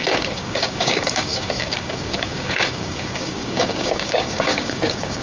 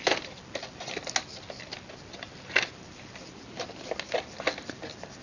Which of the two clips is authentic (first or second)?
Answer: second